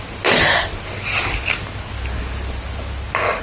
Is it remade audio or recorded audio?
recorded